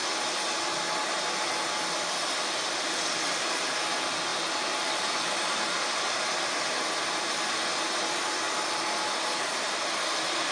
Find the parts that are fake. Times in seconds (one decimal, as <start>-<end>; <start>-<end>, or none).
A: none